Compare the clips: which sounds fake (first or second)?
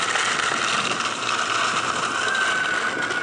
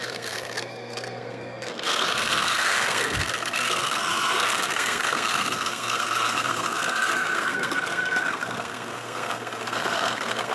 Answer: second